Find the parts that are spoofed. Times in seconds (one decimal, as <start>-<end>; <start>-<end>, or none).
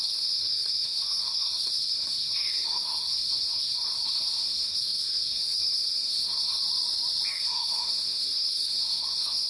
0.0-6.6; 7.3-9.5